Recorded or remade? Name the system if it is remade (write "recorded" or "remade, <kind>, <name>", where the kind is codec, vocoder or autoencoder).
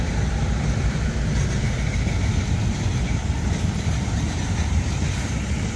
remade, vocoder, BigVGAN v2